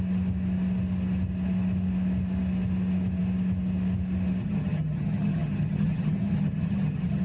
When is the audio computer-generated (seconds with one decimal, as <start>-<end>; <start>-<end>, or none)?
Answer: 4.4-7.2